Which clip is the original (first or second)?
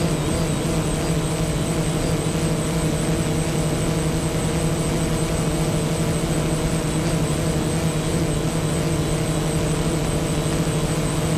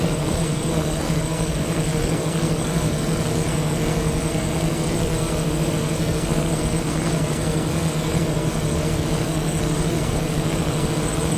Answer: first